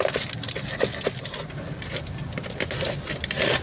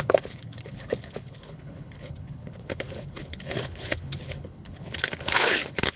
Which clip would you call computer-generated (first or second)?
second